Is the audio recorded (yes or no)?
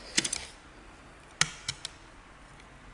yes